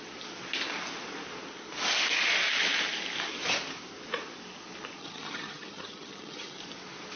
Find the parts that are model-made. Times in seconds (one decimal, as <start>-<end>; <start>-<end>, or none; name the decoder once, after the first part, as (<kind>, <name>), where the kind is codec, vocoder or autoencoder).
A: 5.0-6.6 (vocoder, HiFi-GAN)

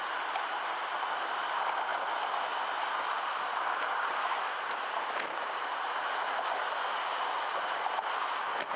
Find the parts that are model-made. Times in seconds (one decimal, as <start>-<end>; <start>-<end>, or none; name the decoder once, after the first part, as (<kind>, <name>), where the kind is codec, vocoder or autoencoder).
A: none

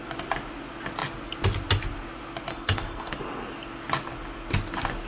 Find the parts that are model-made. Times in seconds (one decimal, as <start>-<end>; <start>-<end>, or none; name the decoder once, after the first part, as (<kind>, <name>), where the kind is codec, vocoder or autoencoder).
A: 2.5-3.2 (codec, SNAC)

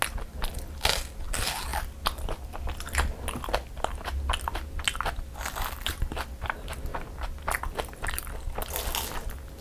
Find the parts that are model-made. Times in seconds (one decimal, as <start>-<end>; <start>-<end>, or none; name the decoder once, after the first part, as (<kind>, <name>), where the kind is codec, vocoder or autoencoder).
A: none

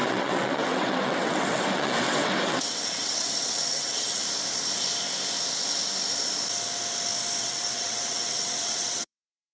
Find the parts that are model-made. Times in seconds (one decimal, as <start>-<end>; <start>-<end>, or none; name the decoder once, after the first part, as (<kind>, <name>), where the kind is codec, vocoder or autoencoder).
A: 0.0-4.2 (vocoder, WaveNeXt); 7.4-9.5

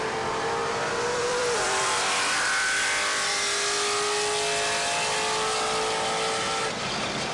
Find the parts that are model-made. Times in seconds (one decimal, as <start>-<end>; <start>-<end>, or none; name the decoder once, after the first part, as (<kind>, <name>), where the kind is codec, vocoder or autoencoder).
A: 0.6-3.3 (vocoder, BigVGAN v2)

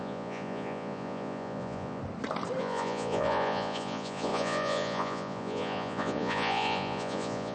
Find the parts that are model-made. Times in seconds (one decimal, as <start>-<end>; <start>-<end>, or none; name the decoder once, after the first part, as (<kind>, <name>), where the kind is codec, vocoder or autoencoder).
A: 0.0-2.0 (vocoder, Vocos); 2.6-7.5

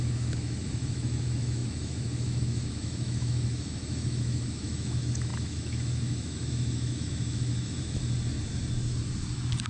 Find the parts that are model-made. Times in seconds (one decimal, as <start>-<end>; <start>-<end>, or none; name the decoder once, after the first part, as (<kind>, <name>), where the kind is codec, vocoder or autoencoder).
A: 0.0-8.0 (autoencoder, DAC-VAE)